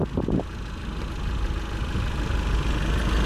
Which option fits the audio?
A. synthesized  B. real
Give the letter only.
B